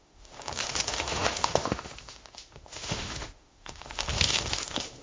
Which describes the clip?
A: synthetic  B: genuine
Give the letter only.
A